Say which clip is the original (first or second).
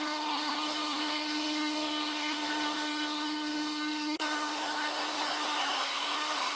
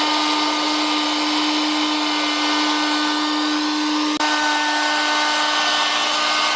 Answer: second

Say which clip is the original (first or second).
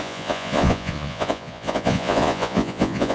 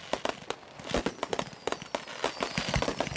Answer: second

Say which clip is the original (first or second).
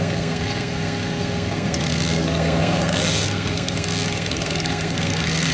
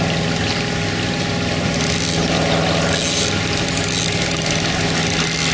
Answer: second